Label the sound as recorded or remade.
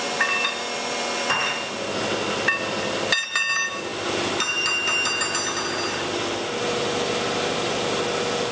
recorded